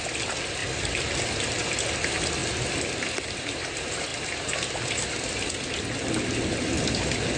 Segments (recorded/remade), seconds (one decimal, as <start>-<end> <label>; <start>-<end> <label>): 0.0-7.4 recorded